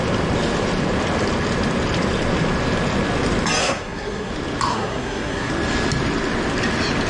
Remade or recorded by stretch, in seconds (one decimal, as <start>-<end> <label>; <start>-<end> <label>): 0.0-3.6 recorded; 3.6-4.3 remade; 4.3-4.7 recorded; 4.7-5.5 remade; 5.5-7.1 recorded

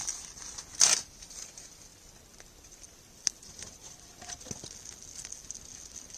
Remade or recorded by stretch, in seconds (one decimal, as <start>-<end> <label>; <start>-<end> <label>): 0.0-6.2 recorded

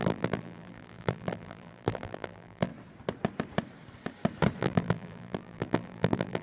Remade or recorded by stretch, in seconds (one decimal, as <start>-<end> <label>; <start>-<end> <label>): 0.0-2.7 remade; 2.7-4.6 recorded; 4.6-6.4 remade

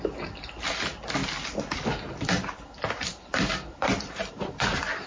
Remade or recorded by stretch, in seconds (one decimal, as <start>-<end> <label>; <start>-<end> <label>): 0.0-1.2 recorded; 1.2-4.3 remade; 4.3-5.1 recorded

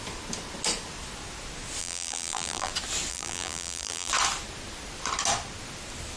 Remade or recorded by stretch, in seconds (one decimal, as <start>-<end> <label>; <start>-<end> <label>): 0.0-1.8 recorded; 1.8-2.7 remade; 2.7-3.1 recorded; 3.1-4.1 remade; 4.1-6.2 recorded